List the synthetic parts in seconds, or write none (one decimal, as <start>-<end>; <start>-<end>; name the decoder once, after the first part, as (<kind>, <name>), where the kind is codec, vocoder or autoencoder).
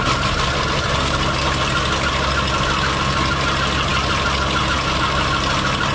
none